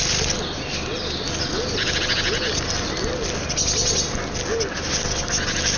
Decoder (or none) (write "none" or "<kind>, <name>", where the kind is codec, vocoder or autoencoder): none